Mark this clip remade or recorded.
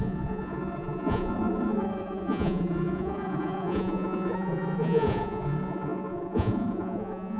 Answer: remade